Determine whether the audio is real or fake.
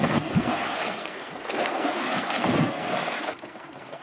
fake